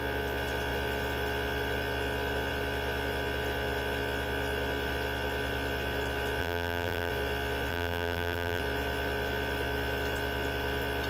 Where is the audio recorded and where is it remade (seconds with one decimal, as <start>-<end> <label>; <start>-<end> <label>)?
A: 0.0-6.4 recorded; 6.4-7.1 remade; 7.1-7.7 recorded; 7.7-8.6 remade; 8.6-11.1 recorded